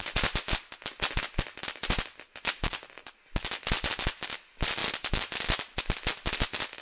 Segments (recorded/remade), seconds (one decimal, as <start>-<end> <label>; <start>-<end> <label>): 0.0-6.8 recorded